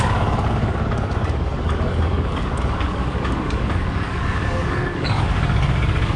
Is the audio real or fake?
fake